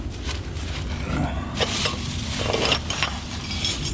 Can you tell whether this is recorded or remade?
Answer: recorded